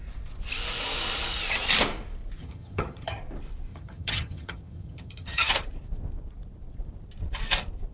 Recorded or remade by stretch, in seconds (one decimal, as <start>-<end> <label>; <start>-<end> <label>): 0.0-2.4 recorded; 2.4-3.2 remade; 3.2-3.7 recorded; 3.7-5.5 remade; 5.5-7.9 recorded